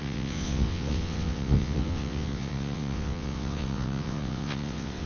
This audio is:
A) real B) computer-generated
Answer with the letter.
B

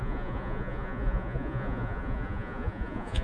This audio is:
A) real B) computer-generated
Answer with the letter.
B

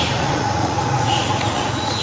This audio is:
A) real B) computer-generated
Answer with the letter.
B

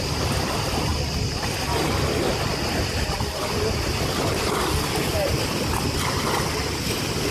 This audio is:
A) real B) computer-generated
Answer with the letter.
A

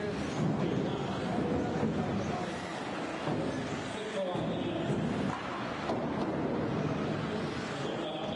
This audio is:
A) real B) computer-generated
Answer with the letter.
A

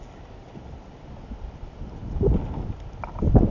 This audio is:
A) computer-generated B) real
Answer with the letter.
B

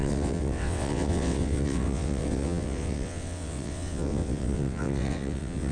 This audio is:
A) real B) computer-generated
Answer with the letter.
B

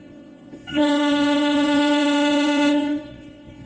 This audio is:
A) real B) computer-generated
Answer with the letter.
B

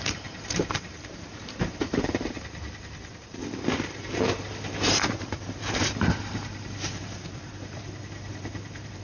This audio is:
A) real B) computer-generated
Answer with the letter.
B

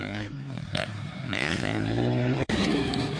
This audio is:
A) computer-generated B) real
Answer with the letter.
A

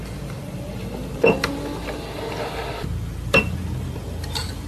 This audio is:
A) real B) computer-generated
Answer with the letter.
A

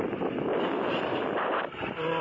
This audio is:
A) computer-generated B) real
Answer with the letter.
B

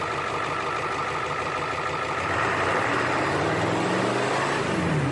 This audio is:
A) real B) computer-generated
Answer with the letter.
A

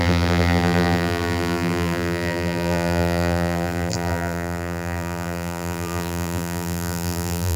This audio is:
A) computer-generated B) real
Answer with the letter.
A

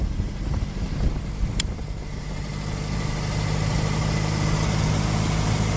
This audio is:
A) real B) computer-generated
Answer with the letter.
A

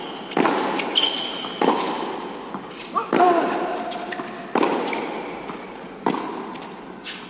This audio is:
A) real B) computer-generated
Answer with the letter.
A